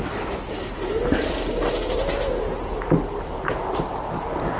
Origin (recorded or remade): recorded